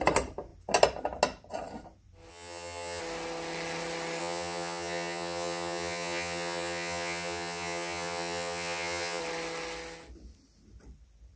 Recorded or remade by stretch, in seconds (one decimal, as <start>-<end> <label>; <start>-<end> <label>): 0.0-2.3 recorded; 2.3-3.0 remade; 3.0-4.2 recorded; 4.2-9.2 remade; 9.2-11.4 recorded